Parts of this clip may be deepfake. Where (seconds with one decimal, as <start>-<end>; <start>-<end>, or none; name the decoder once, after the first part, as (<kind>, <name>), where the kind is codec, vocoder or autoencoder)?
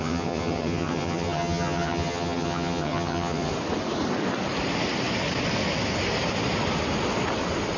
0.0-3.5 (vocoder, HiFi-GAN)